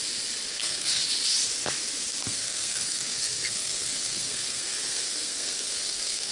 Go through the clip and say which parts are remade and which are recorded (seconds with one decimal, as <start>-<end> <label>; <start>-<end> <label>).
0.0-0.5 recorded; 0.5-1.0 remade; 1.0-2.2 recorded; 2.2-6.3 remade